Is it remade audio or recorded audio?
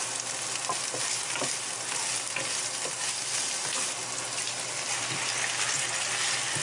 recorded